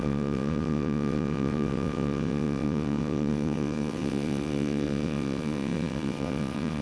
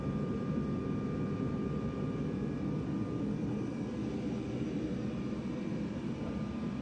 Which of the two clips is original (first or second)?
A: second